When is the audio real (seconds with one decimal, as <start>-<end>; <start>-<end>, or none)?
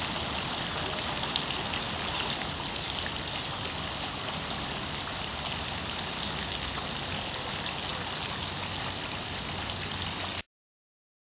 0.0-11.3